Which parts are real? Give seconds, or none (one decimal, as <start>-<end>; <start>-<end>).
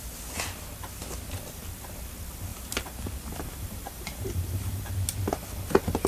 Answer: 0.0-2.5; 4.9-6.1